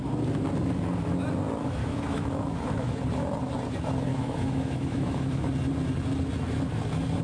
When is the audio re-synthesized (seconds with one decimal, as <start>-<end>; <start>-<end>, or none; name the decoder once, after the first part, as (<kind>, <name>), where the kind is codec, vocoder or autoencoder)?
1.8-3.0 (autoencoder, DAC-VAE); 4.1-5.5